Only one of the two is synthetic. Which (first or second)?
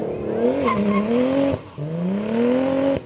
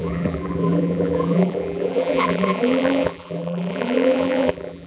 second